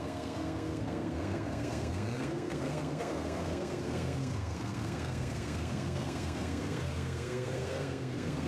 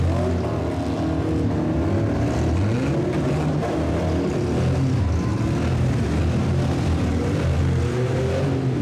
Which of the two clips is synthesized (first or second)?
first